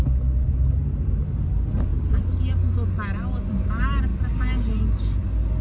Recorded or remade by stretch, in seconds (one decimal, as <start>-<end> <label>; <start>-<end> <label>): 0.0-5.6 recorded